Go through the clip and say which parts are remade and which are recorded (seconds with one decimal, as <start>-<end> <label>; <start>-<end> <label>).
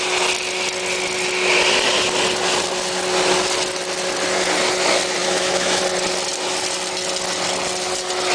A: 0.0-5.2 recorded; 5.2-5.8 remade; 5.8-8.3 recorded